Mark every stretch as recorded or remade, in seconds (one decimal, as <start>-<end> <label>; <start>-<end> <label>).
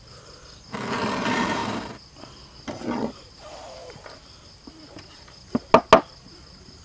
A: 0.0-6.8 recorded